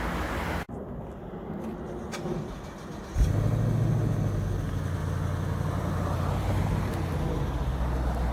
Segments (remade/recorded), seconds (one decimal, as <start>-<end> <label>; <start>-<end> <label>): 0.0-8.3 recorded